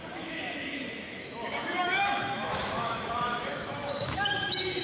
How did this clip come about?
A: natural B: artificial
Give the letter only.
B